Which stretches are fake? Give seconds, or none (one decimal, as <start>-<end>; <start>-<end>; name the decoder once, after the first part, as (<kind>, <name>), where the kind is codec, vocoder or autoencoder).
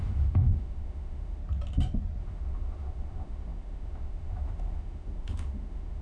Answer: 0.0-1.4 (autoencoder, DAC-VAE); 2.2-6.0